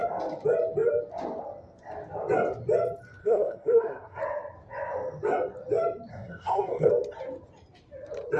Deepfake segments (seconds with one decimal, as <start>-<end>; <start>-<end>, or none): 3.2-4.2; 6.1-6.9